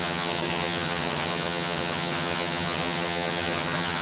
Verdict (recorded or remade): remade